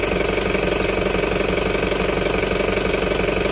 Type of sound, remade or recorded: recorded